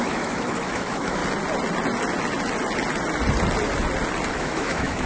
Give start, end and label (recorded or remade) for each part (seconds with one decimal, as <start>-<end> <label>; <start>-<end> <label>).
0.0-1.2 remade; 1.2-4.3 recorded; 4.3-5.1 remade